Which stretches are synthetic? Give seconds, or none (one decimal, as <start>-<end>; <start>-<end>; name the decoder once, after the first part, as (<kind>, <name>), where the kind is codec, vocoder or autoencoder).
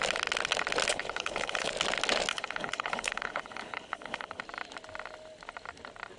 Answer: 0.9-1.7 (codec, HILCodec); 2.3-4.4